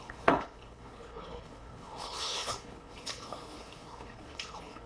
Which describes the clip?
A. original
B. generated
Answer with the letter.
B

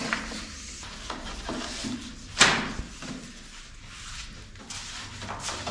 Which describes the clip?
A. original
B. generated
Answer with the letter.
A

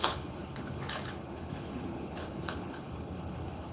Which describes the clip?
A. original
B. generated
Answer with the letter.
B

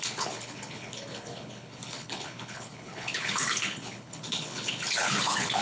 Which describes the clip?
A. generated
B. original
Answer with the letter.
A